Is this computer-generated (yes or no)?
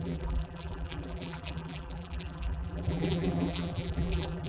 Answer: yes